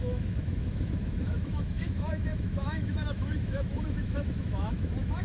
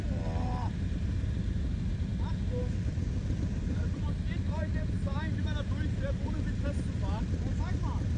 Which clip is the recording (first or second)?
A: second